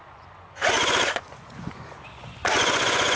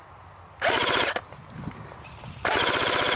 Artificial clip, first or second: first